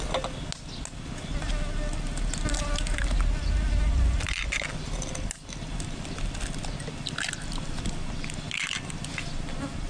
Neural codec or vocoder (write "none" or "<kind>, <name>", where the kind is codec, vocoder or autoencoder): none